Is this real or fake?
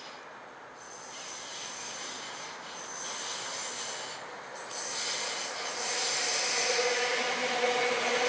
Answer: real